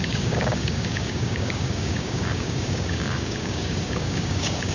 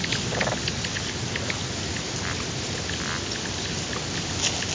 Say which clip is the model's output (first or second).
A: first